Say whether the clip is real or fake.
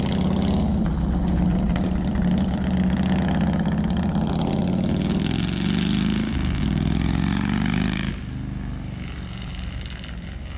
real